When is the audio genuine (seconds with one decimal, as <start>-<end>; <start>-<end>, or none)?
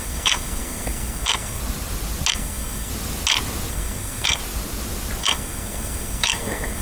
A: 1.6-2.3; 2.9-3.7; 4.4-5.2